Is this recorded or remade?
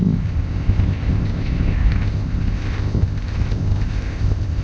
remade